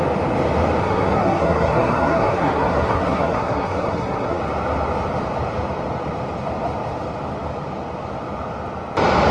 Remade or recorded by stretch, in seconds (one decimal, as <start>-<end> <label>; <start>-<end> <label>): 0.0-0.8 recorded; 0.8-4.4 remade; 4.4-9.3 recorded